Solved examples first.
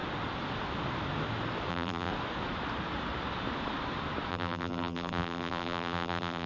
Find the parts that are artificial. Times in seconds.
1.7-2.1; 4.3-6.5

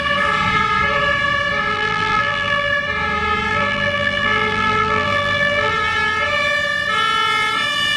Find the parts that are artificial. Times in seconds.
1.7-2.7; 3.5-5.7

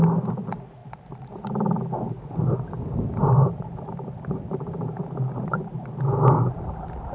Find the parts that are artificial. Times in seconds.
0.8-1.3; 3.4-6.0